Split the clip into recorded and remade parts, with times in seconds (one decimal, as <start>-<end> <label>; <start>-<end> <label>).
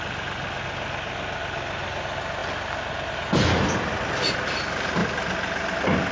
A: 0.0-6.1 recorded